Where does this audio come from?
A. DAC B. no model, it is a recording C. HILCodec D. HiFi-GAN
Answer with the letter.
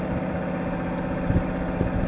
B